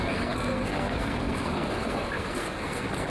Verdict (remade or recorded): remade